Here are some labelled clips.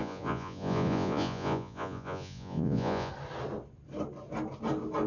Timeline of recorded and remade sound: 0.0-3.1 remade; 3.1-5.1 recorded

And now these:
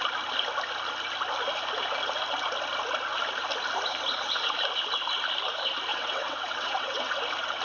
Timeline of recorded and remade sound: 0.0-5.9 recorded; 5.9-7.1 remade; 7.1-7.6 recorded

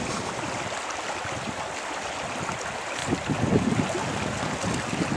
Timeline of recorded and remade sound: 0.0-5.2 recorded

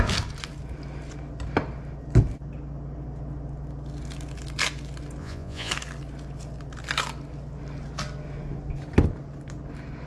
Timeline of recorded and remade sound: 0.0-5.2 recorded; 5.2-5.7 remade; 5.7-10.1 recorded

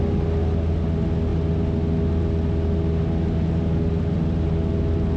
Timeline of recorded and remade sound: 0.0-5.2 recorded

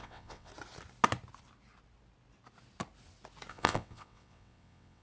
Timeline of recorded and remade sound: 0.0-0.5 remade; 0.5-3.5 recorded; 3.5-5.0 remade

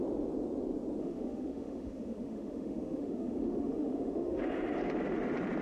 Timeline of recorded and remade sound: 0.0-1.0 recorded; 1.0-4.4 remade; 4.4-5.6 recorded

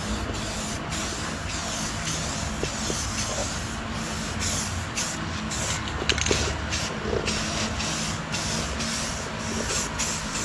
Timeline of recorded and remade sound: 0.0-10.4 recorded